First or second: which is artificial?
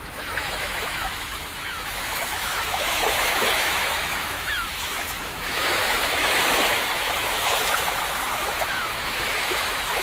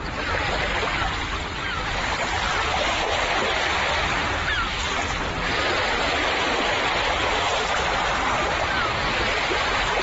first